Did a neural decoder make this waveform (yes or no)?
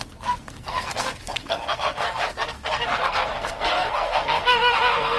yes